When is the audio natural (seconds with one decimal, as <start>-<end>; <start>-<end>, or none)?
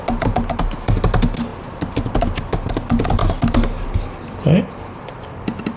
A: 0.0-5.8